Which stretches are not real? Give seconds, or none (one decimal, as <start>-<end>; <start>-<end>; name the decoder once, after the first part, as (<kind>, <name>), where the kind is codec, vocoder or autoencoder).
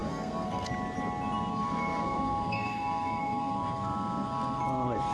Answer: 0.0-0.7 (codec, SNAC); 1.5-4.6